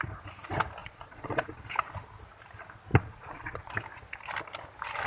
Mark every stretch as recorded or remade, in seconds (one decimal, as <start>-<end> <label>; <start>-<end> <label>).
0.0-0.8 recorded; 0.8-1.6 remade; 1.6-2.9 recorded; 2.9-3.7 remade; 3.7-5.1 recorded